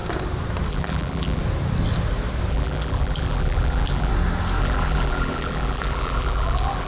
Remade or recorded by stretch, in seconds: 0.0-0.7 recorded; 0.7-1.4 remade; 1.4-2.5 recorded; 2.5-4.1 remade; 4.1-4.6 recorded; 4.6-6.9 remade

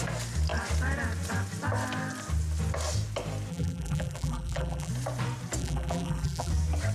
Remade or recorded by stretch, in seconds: 0.0-3.5 recorded; 3.5-4.9 remade; 4.9-5.6 recorded; 5.6-6.5 remade; 6.5-6.9 recorded